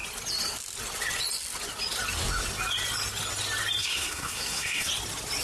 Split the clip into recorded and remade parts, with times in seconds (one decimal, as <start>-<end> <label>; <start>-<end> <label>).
0.0-3.8 recorded; 3.8-4.9 remade; 4.9-5.4 recorded